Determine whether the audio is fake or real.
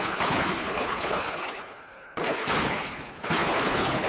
fake